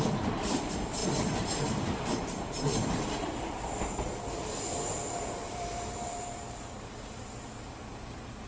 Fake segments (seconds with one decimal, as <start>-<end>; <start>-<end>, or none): 0.0-8.5